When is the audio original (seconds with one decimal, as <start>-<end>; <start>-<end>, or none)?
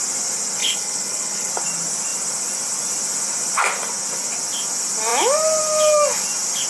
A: 0.0-0.6; 1.5-6.7